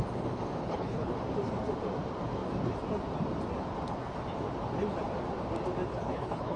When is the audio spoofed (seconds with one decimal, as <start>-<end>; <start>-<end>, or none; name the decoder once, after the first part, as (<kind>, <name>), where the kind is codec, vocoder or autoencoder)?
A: 0.6-1.1 (codec, HILCodec); 5.9-6.6